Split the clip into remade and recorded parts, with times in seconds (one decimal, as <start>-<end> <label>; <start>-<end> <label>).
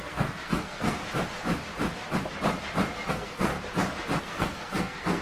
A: 0.0-1.0 remade; 1.0-3.1 recorded; 3.1-3.5 remade; 3.5-4.2 recorded; 4.2-5.2 remade